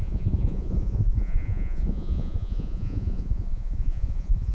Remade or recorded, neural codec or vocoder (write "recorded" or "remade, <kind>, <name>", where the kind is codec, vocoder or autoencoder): remade, vocoder, Vocos